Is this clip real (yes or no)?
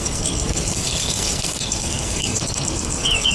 no